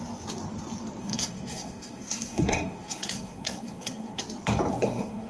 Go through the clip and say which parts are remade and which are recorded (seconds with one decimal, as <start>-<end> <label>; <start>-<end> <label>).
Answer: 0.0-1.0 recorded; 1.0-4.2 remade; 4.2-4.7 recorded; 4.7-5.3 remade